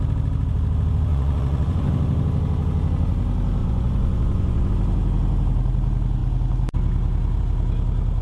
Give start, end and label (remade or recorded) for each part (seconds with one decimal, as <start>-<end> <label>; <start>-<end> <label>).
0.0-1.1 recorded; 1.1-1.9 remade; 1.9-3.6 recorded; 3.6-4.7 remade; 4.7-8.2 recorded